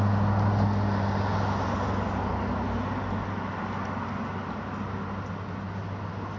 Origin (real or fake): real